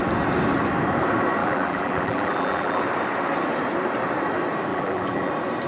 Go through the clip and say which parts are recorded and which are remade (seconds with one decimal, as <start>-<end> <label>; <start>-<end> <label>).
0.0-1.4 recorded; 1.4-2.8 remade; 2.8-4.7 recorded; 4.7-5.3 remade; 5.3-5.7 recorded